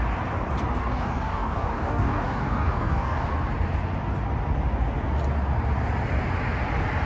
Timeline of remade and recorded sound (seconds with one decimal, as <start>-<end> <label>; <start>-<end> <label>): 0.0-0.8 recorded; 0.8-3.3 remade; 3.3-7.1 recorded